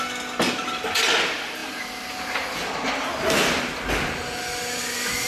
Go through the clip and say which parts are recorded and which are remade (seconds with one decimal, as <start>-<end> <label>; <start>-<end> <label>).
0.0-5.3 recorded